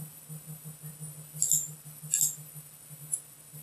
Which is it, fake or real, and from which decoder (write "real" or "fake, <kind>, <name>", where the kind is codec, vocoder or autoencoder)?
real